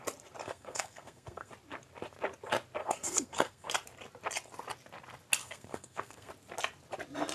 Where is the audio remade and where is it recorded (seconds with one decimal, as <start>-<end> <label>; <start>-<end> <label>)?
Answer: 0.0-0.4 recorded; 0.4-1.5 remade; 1.5-2.8 recorded; 2.8-3.7 remade; 3.7-5.4 recorded; 5.4-6.3 remade; 6.3-7.3 recorded